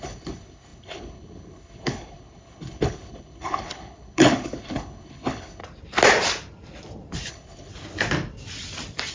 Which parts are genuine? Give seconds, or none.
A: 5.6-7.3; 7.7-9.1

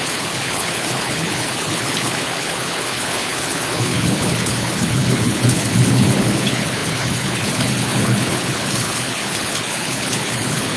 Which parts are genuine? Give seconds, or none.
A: none

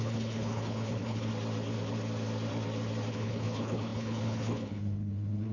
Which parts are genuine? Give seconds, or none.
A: 1.3-3.1

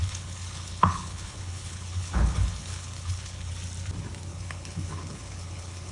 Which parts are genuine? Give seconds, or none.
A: 3.5-4.3

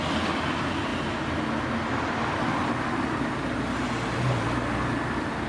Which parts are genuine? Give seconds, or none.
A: 0.0-5.5

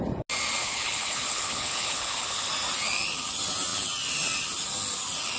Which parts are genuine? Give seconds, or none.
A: 0.0-0.6; 2.5-5.4